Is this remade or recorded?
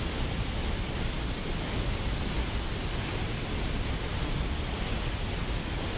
recorded